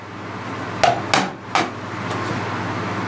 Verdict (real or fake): real